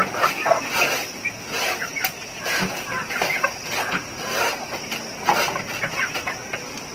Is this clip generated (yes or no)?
no